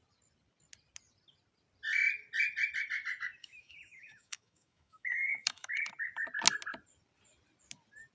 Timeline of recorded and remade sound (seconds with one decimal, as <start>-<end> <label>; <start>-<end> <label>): 0.0-3.4 recorded; 3.4-5.9 remade; 5.9-8.1 recorded